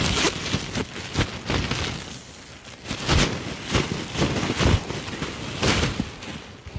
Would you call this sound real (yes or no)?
yes